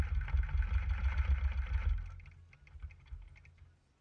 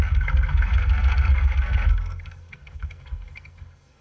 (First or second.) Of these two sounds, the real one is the first